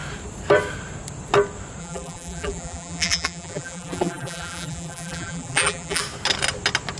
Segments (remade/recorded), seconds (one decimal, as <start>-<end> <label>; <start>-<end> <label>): 0.0-1.8 recorded; 1.8-6.0 remade; 6.0-7.0 recorded